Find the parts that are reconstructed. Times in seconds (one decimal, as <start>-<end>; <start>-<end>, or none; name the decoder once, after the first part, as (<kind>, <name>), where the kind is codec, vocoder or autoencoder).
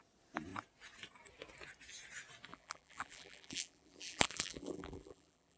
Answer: 2.5-5.6 (vocoder, BigVGAN v2)